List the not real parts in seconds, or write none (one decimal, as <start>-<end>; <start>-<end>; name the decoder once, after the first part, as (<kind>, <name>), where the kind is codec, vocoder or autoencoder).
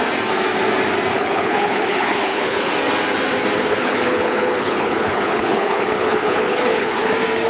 1.1-2.7 (codec, HILCodec); 3.6-7.1